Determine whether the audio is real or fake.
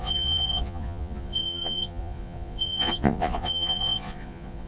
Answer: fake